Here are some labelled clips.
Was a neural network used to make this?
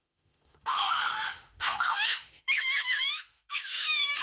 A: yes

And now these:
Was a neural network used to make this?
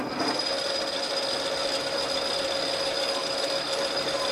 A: no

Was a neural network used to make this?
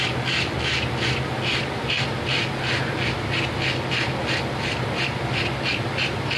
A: no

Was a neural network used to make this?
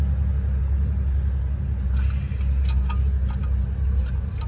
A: no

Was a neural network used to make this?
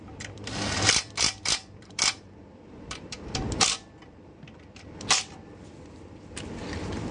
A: yes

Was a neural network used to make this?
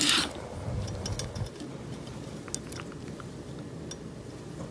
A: no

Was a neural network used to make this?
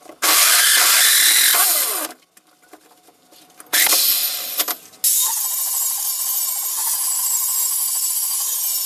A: no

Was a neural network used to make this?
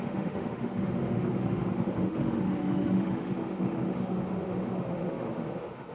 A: yes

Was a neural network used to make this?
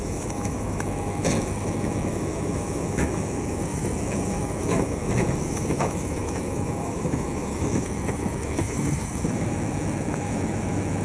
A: yes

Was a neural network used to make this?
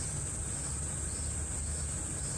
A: no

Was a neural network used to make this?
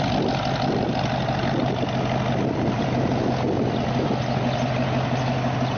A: no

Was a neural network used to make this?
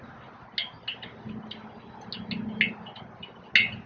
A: no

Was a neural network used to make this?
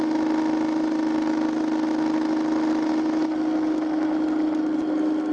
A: no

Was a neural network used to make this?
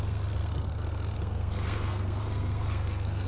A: yes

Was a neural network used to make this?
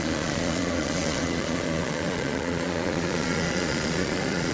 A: yes